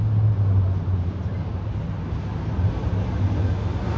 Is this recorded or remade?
recorded